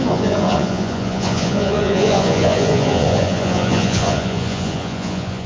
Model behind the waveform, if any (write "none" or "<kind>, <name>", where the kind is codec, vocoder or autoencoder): vocoder, Vocos